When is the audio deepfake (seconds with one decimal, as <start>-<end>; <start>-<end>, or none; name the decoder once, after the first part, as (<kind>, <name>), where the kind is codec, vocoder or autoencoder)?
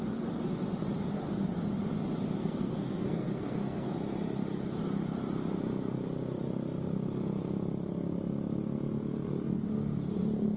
2.4-3.9 (codec, SNAC)